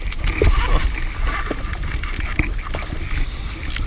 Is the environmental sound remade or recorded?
recorded